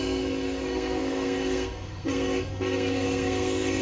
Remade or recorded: remade